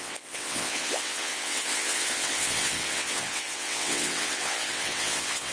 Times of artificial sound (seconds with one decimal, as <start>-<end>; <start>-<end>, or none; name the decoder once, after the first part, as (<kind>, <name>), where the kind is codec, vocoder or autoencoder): 0.0-5.5 (vocoder, WaveNeXt)